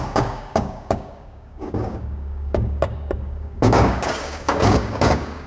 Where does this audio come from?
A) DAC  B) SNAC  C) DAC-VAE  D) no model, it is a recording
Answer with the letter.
A